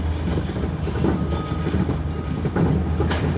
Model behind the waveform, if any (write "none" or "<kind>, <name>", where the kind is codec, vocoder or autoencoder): none